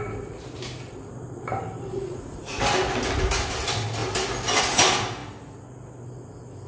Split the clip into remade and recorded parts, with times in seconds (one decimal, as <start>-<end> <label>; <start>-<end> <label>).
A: 0.0-1.9 recorded; 1.9-2.6 remade; 2.6-6.7 recorded